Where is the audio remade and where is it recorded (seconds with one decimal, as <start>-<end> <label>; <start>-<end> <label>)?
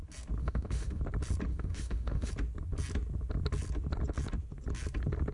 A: 0.0-0.4 recorded; 0.4-1.0 remade; 1.0-1.5 recorded; 1.5-2.3 remade; 2.3-5.3 recorded